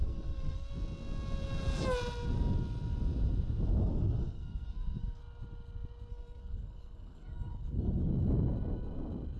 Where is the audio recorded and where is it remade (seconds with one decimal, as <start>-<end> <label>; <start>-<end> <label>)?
0.0-0.7 remade; 0.7-3.8 recorded; 3.8-5.2 remade; 5.2-6.1 recorded; 6.1-8.1 remade; 8.1-9.4 recorded

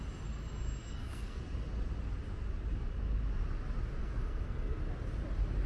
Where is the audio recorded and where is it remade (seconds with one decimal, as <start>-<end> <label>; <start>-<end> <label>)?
0.0-0.8 recorded; 0.8-1.4 remade; 1.4-4.0 recorded; 4.0-4.8 remade; 4.8-5.7 recorded

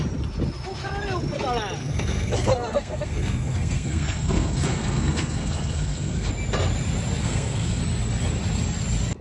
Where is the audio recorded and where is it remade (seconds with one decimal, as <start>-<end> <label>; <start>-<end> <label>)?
0.0-1.8 recorded; 1.8-6.3 remade; 6.3-7.2 recorded; 7.2-7.8 remade; 7.8-9.2 recorded

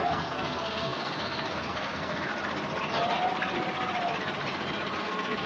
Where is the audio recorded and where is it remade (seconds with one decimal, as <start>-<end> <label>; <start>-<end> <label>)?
0.0-2.3 remade; 2.3-5.0 recorded; 5.0-5.5 remade

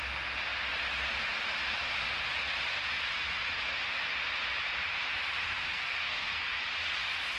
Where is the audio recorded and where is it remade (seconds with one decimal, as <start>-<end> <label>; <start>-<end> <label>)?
0.0-5.7 recorded; 5.7-6.6 remade; 6.6-7.4 recorded

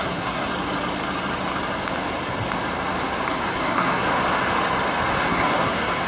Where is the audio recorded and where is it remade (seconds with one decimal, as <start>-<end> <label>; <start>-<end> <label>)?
0.0-0.5 remade; 0.5-3.3 recorded; 3.3-4.1 remade; 4.1-5.2 recorded; 5.2-6.1 remade